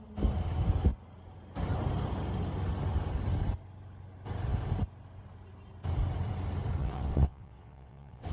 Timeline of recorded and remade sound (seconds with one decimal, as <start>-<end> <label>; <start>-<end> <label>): 0.0-6.8 recorded; 6.8-8.3 remade